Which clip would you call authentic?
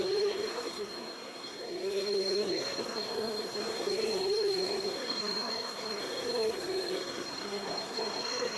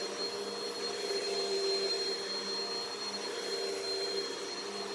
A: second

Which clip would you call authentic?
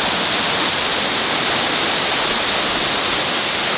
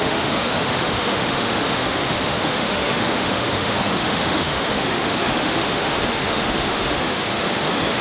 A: first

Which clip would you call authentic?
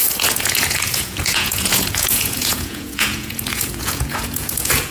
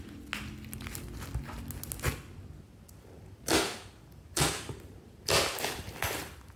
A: second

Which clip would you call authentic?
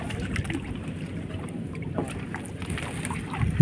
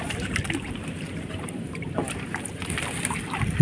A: first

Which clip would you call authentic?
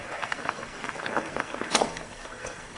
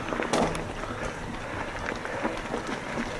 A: second